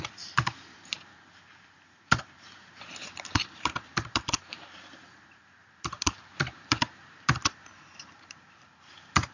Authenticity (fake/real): fake